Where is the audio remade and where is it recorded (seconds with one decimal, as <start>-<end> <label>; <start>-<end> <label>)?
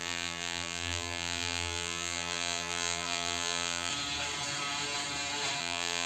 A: 0.0-3.9 remade; 3.9-5.6 recorded; 5.6-6.1 remade